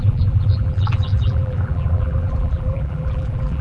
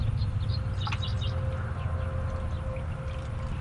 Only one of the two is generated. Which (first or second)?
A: first